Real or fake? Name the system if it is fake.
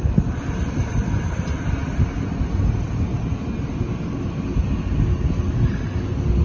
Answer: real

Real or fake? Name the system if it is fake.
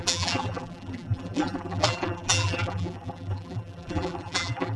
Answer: fake, vocoder, BigVGAN v2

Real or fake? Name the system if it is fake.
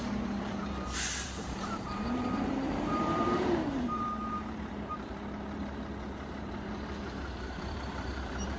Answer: fake, vocoder, BigVGAN v2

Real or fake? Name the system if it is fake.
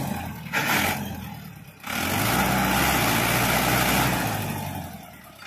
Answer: real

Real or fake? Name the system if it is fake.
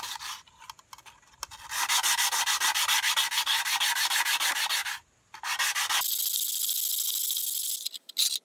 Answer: real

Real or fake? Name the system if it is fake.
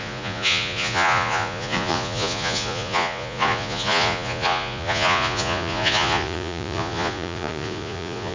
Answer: fake, vocoder, Vocos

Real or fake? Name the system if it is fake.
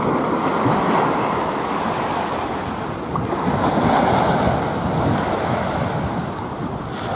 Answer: real